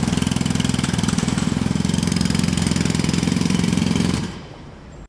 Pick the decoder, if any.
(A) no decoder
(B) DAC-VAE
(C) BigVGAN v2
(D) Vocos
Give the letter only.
C